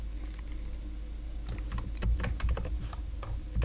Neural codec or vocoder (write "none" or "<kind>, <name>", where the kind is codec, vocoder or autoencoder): none